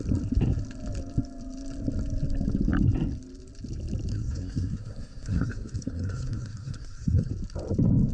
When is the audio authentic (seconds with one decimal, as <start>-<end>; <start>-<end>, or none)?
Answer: 0.0-4.1; 7.3-8.1